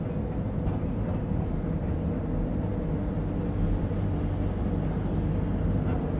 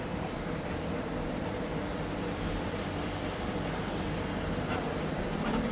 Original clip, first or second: first